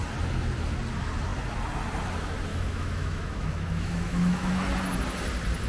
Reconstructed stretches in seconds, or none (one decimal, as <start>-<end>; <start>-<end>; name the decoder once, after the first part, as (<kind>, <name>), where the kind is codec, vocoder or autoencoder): 2.5-4.5 (autoencoder, DAC-VAE)